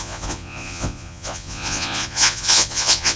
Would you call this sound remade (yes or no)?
yes